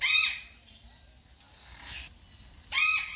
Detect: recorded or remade recorded